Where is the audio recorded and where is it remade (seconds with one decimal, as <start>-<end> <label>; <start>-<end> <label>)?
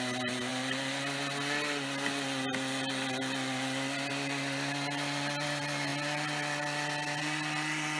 0.0-8.0 recorded